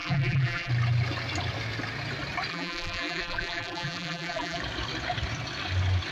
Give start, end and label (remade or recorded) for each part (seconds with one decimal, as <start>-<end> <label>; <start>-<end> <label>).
0.0-0.7 remade; 0.7-2.5 recorded; 2.5-4.6 remade; 4.6-6.1 recorded